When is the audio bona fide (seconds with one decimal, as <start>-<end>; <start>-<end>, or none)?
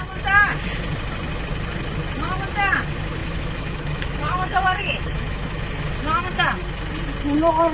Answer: 0.0-3.2; 5.9-7.7